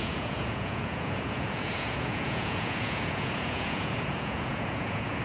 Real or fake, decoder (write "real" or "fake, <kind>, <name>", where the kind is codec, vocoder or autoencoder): fake, vocoder, Vocos